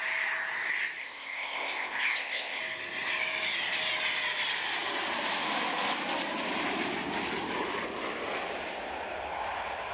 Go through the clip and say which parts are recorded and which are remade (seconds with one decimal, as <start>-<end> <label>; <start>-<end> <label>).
0.0-1.0 recorded; 1.0-2.6 remade; 2.6-9.9 recorded